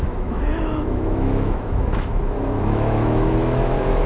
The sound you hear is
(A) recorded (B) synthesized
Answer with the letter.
B